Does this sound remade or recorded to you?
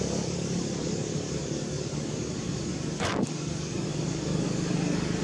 remade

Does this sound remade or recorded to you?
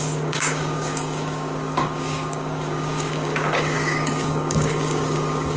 remade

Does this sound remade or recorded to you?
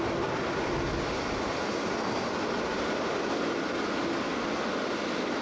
recorded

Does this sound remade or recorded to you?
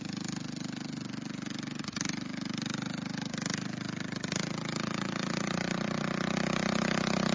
recorded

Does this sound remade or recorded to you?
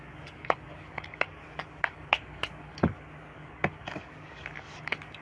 remade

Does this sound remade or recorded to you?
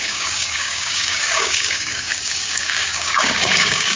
remade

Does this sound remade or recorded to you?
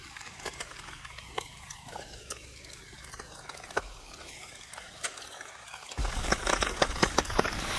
remade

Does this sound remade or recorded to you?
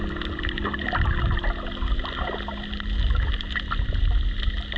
recorded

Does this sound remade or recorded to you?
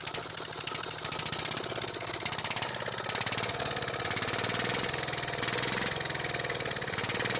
recorded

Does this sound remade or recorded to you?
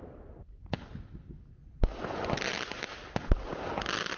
recorded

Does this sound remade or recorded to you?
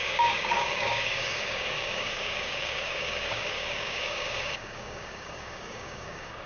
remade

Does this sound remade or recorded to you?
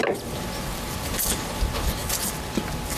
recorded